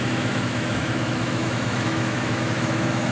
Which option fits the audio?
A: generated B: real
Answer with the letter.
A